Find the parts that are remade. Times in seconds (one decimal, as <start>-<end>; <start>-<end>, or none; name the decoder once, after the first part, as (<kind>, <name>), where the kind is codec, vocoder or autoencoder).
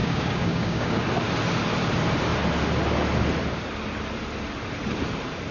0.0-1.0 (codec, DAC)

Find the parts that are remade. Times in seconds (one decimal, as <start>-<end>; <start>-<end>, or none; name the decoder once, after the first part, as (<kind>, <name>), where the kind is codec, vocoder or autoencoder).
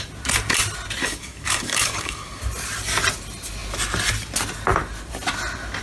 1.0-2.4 (codec, DAC)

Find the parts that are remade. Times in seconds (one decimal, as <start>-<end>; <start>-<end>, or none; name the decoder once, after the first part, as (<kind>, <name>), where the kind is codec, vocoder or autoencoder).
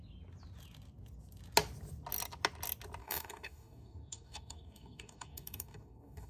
3.0-6.3 (codec, DAC)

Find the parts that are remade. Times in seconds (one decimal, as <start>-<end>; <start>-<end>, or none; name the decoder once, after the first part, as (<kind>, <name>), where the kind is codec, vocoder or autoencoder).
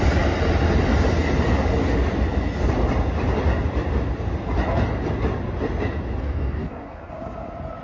6.2-7.1 (codec, DAC)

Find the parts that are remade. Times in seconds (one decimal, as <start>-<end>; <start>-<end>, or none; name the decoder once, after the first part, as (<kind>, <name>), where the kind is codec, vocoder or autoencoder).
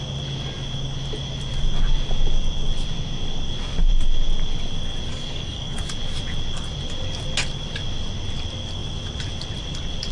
5.1-5.8 (codec, DAC)